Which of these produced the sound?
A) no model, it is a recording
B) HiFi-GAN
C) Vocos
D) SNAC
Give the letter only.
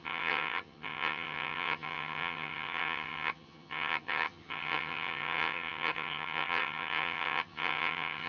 B